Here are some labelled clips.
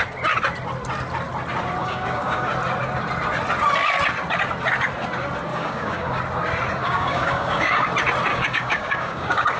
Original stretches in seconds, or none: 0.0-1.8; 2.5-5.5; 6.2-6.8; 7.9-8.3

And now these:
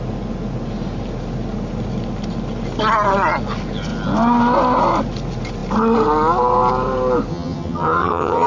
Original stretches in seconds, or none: 0.0-7.3

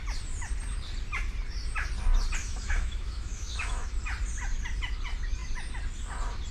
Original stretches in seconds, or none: 0.0-2.4; 3.9-6.5

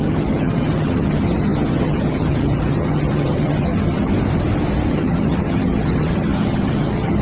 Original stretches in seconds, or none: 4.1-4.9

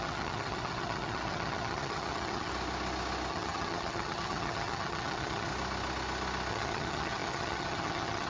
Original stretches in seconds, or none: 2.5-3.3; 5.5-6.5

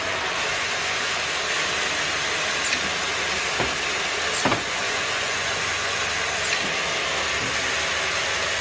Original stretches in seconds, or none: 0.0-0.5; 1.2-4.5; 6.0-8.6

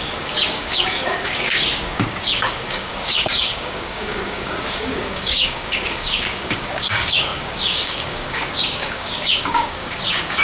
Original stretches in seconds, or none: none

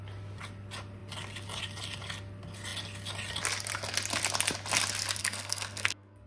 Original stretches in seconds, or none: 0.0-5.2